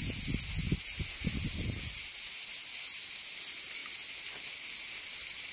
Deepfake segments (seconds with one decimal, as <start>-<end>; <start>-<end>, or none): none